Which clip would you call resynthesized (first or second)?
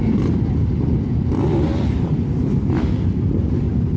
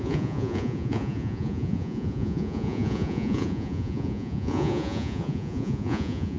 second